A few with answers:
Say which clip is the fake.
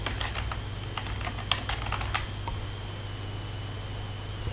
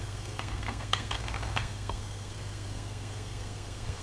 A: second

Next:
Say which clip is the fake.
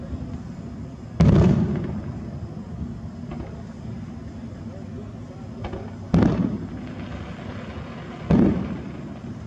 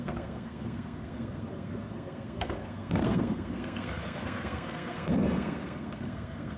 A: second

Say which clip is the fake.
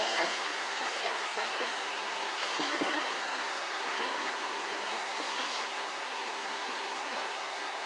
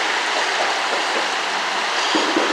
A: first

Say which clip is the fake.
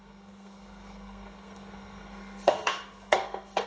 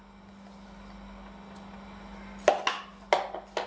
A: first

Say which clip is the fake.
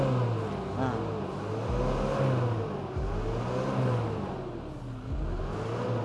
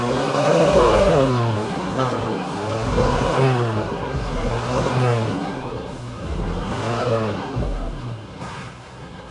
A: second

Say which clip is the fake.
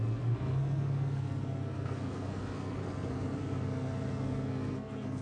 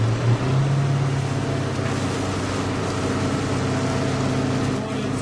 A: first